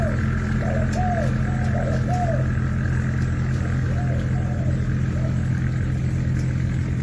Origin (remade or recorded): recorded